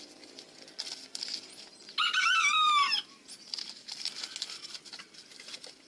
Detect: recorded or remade recorded